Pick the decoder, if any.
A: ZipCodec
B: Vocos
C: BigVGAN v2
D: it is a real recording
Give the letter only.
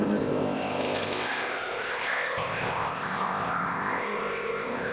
A